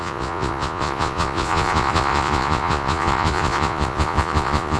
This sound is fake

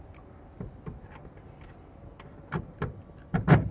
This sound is real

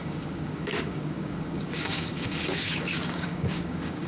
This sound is fake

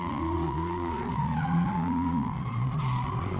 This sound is fake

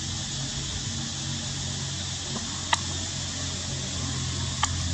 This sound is real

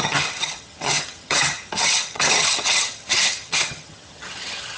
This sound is fake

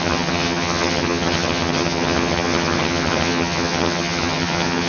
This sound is fake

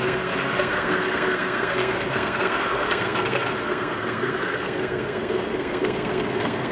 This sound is fake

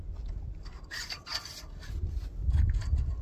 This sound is real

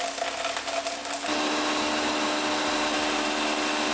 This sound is real